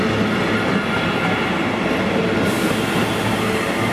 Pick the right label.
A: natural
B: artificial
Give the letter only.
A